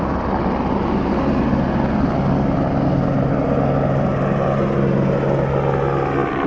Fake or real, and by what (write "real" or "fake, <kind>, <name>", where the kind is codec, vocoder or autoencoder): real